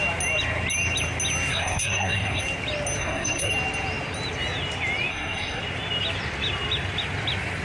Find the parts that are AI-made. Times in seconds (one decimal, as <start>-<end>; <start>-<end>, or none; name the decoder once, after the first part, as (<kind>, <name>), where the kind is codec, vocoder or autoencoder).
1.5-2.4 (codec, SNAC); 3.0-3.5; 5.1-5.6